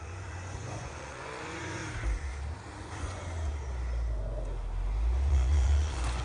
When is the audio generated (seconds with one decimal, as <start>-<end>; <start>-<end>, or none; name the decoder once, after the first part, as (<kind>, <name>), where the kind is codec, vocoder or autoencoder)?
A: 0.0-1.8 (vocoder, Vocos); 2.8-3.2; 5.3-6.2